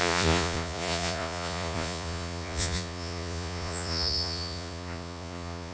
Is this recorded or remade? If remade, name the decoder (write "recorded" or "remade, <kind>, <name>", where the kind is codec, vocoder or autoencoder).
remade, vocoder, Vocos